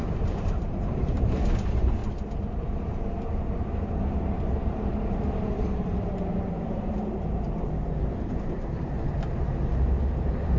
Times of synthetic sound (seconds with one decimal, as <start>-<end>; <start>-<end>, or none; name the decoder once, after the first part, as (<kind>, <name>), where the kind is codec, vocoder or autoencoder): 0.0-2.0 (vocoder, BigVGAN v2); 2.6-10.6